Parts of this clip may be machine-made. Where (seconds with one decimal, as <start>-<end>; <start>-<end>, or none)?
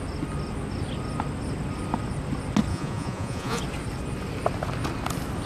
2.7-3.6